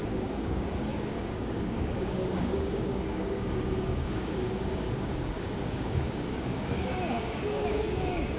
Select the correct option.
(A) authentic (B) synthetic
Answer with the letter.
B